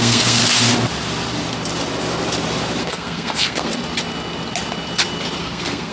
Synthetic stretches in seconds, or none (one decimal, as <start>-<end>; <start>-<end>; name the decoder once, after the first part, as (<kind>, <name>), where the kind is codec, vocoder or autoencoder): 0.0-0.4 (codec, SNAC); 2.8-3.7; 5.4-5.9